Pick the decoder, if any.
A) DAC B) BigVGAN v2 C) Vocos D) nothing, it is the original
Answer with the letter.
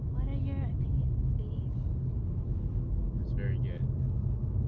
D